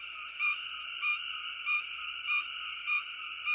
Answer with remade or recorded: recorded